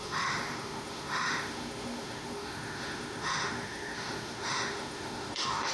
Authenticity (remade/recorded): remade